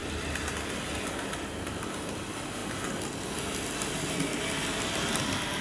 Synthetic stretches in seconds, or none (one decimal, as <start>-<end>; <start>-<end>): none